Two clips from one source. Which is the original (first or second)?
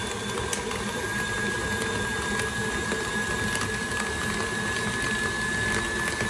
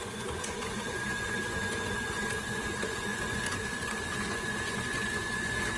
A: first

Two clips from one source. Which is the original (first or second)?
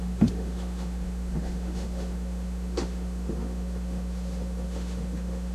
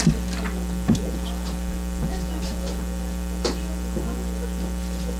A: second